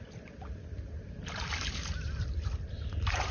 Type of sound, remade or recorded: recorded